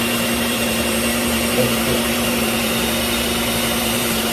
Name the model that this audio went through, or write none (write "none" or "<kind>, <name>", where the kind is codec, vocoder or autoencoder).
vocoder, BigVGAN v2